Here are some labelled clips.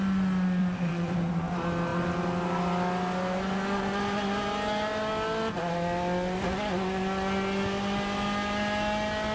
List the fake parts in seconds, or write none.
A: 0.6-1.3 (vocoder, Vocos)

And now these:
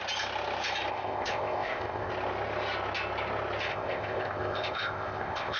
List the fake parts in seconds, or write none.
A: 0.9-2.1 (codec, ZipCodec); 3.7-5.6

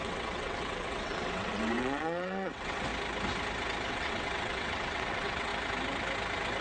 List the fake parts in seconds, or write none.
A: 0.0-2.9 (vocoder, WaveNeXt); 3.9-5.5

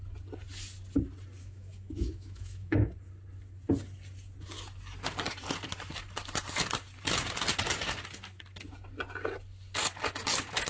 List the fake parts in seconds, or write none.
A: 1.4-2.9 (autoencoder, DAC-VAE)

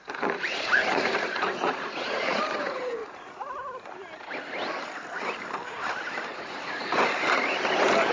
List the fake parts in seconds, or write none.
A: 0.0-3.0 (vocoder, Vocos); 6.3-7.0